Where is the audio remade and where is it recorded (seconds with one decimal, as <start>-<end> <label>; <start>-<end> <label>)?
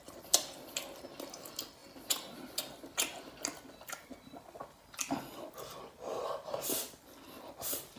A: 0.0-8.0 recorded